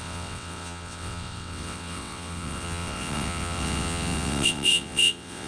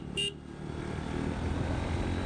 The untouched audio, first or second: second